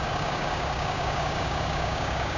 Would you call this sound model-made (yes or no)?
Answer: yes